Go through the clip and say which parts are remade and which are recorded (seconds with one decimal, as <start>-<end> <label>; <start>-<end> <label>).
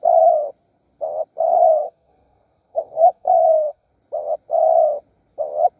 0.0-1.5 recorded; 1.5-3.9 remade; 3.9-5.8 recorded